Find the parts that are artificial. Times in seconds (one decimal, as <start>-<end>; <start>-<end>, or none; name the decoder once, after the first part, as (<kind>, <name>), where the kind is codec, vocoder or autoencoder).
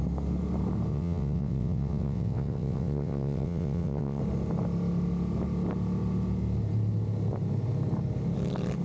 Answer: 0.9-4.2 (vocoder, WaveNeXt)